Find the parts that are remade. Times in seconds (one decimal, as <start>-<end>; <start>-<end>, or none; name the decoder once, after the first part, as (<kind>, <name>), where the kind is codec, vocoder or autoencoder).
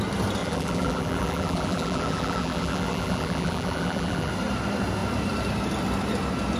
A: 0.4-4.3 (vocoder, BigVGAN v2)